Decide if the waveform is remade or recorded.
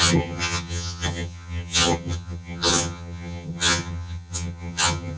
remade